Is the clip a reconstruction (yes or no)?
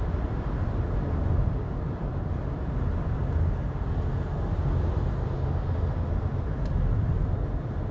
no